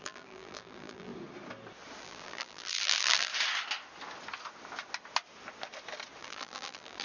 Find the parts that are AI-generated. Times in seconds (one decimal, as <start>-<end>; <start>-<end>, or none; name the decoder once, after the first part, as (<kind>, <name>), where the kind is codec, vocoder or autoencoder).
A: 0.0-1.1 (vocoder, BigVGAN v2); 2.0-3.3; 6.2-7.0